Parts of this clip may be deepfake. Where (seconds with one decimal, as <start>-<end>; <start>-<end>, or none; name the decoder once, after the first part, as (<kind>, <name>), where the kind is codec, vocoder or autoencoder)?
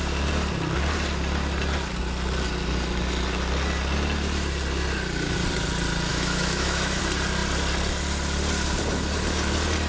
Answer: 6.1-7.0 (autoencoder, DAC-VAE)